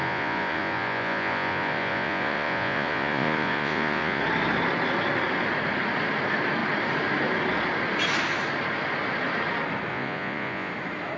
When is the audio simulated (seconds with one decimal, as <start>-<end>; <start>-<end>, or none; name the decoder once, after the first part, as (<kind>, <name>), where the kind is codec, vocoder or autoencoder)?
0.0-4.2 (vocoder, Vocos); 9.9-10.7